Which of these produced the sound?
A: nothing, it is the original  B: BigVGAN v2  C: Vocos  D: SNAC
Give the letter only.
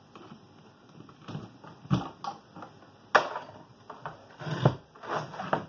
A